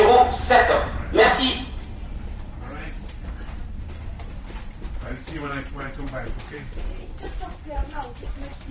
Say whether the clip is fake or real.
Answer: fake